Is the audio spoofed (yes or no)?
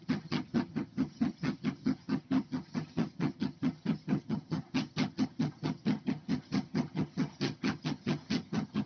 yes